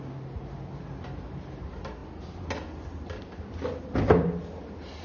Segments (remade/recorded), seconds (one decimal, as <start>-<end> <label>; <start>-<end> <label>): 0.0-5.0 recorded